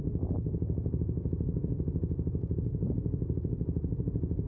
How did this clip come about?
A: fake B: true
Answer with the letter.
B